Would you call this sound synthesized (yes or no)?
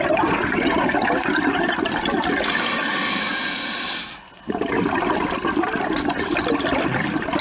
no